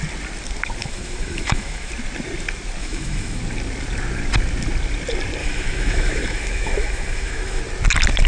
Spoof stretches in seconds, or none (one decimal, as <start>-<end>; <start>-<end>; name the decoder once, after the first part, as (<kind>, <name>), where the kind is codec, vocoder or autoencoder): 0.8-1.9 (autoencoder, DAC-VAE); 2.8-3.4; 5.4-7.6